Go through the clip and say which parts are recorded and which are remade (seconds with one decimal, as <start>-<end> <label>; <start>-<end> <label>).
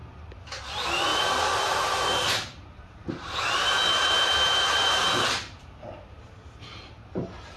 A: 0.0-1.1 recorded; 1.1-3.4 remade; 3.4-3.9 recorded; 3.9-6.9 remade; 6.9-7.6 recorded